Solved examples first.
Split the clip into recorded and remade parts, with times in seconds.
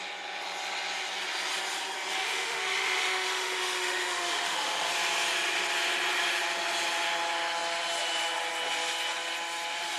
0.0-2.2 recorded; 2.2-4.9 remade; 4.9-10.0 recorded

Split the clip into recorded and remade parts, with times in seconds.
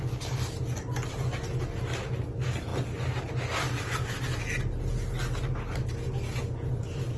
0.0-7.2 recorded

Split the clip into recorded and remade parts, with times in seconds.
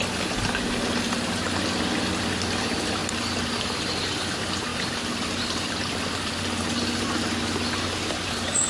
0.0-8.7 recorded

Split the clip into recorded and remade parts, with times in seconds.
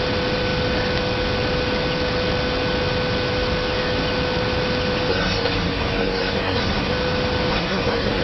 0.0-5.1 recorded; 5.1-6.9 remade; 6.9-7.5 recorded; 7.5-8.2 remade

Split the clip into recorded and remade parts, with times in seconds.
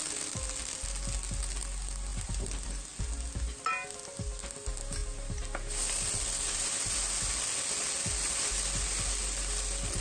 0.0-10.0 recorded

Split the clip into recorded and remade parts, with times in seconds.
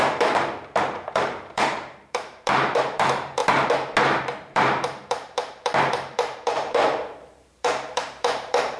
0.0-3.4 remade; 3.4-4.2 recorded; 4.2-8.8 remade